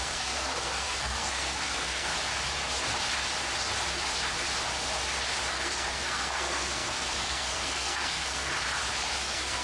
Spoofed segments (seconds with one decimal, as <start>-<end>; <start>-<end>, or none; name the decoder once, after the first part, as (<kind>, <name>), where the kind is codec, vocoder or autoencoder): 0.0-2.1 (codec, SNAC); 5.5-8.5; 9.2-9.6